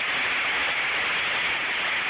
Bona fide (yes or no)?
yes